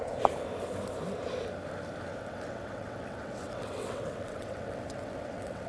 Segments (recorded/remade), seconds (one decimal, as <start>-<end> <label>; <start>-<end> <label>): 0.0-2.1 recorded; 2.1-5.7 remade